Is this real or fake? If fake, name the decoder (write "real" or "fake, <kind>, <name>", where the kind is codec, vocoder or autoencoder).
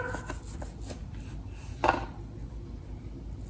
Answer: real